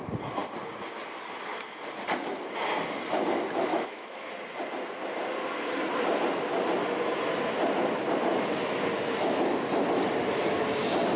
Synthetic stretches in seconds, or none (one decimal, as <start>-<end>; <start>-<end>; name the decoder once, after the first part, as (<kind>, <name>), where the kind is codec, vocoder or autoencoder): 3.7-4.3 (autoencoder, DAC-VAE)

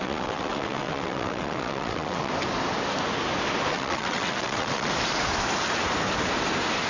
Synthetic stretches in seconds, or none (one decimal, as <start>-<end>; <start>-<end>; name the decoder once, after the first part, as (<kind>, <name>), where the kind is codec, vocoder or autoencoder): 0.0-2.3 (vocoder, WaveNeXt); 3.7-4.9

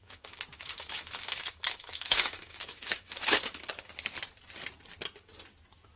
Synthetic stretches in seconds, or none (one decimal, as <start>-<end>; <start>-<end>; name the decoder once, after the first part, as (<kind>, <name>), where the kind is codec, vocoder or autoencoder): 0.0-3.6 (autoencoder, DAC-VAE)

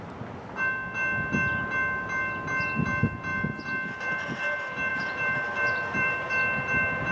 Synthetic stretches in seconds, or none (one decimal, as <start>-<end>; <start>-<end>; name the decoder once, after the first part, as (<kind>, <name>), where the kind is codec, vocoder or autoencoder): 4.9-6.3 (vocoder, BigVGAN v2)